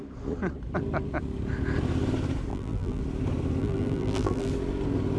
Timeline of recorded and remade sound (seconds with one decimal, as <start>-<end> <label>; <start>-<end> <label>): 0.0-2.5 recorded; 2.5-3.0 remade; 3.0-3.6 recorded; 3.6-4.5 remade; 4.5-5.2 recorded